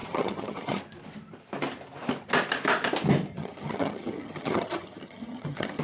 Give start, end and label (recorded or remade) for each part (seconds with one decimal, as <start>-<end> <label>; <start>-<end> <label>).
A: 0.0-0.8 remade; 0.8-3.3 recorded; 3.3-5.8 remade